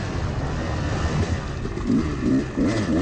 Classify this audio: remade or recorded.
recorded